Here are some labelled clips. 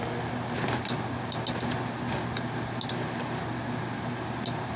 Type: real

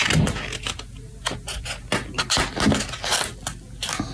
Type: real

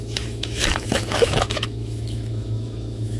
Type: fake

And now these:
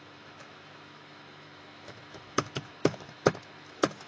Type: fake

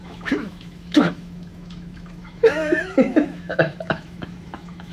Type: fake